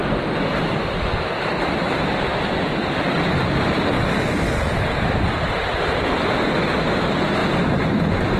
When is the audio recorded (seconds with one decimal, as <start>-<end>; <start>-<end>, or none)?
0.0-1.5